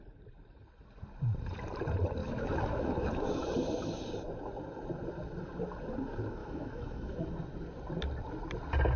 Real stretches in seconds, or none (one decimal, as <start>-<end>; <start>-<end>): 0.0-2.2; 3.4-6.4; 7.3-9.0